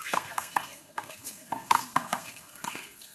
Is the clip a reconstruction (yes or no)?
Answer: yes